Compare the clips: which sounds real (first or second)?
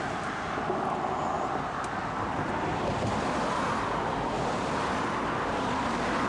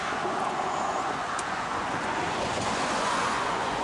first